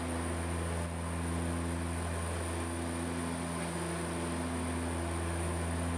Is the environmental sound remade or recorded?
recorded